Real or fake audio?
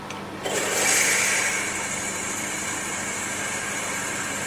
real